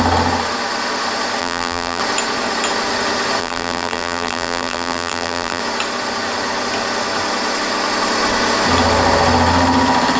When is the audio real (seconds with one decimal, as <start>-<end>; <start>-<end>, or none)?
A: 0.0-1.4; 2.0-3.4; 5.6-10.2

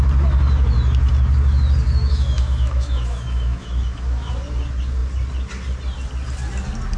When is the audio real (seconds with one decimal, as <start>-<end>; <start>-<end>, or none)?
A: 0.0-2.0; 4.3-7.0

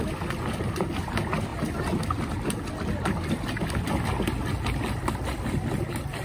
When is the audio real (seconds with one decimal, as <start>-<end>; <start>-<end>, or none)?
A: 0.0-6.2

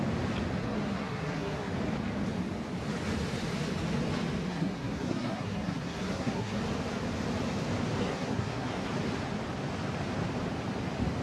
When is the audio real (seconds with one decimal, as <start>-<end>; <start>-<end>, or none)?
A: 0.0-0.6; 1.7-4.5; 6.6-8.0; 8.9-11.2

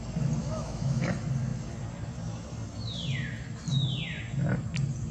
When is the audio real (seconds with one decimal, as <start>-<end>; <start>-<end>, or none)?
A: 0.0-0.4; 1.1-5.1

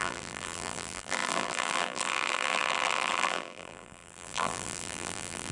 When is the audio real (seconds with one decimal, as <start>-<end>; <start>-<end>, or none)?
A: none